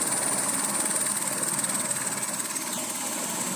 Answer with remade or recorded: recorded